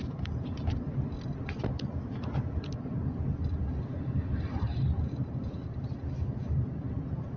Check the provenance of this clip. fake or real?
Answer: real